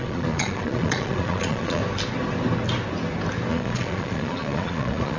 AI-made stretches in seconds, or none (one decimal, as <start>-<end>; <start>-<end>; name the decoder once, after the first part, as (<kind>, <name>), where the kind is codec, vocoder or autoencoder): 0.0-1.8 (vocoder, Vocos); 3.5-5.2